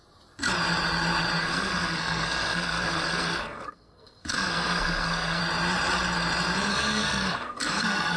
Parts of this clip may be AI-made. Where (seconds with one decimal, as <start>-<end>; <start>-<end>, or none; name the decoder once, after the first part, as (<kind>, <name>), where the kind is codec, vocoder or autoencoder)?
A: 1.4-5.4 (codec, SNAC); 6.7-8.2